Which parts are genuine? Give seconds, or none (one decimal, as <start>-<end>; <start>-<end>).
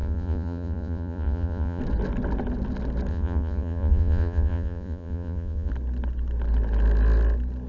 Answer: 1.8-3.1; 5.7-7.7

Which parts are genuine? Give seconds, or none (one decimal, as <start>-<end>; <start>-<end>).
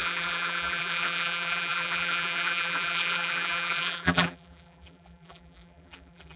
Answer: none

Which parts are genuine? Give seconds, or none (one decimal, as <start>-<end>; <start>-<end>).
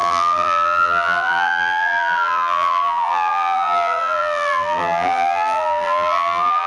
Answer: none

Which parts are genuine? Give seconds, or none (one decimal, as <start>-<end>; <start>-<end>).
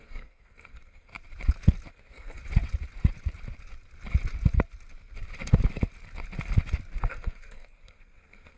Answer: 1.1-1.9; 2.4-7.1